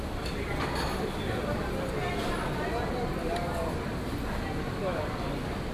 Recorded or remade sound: recorded